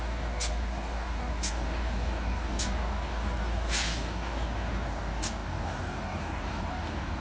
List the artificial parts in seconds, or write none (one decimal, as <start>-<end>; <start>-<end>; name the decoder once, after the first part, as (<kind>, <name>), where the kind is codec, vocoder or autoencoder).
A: 0.0-7.2 (codec, DAC)